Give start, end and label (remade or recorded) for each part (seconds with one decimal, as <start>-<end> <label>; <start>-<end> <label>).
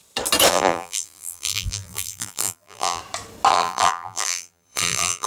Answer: 0.0-0.5 recorded; 0.5-3.0 remade; 3.0-3.5 recorded; 3.5-5.3 remade